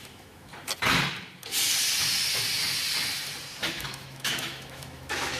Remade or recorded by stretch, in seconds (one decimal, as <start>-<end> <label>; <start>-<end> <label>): 0.0-0.5 remade; 0.5-3.7 recorded; 3.7-5.4 remade